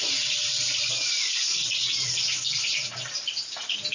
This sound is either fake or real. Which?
fake